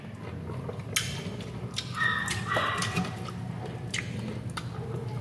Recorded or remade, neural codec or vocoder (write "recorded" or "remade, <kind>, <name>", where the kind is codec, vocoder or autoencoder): recorded